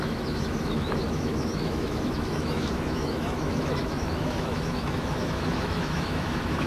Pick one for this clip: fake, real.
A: fake